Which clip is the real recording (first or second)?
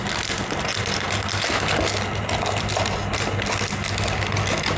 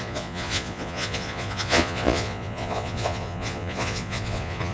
first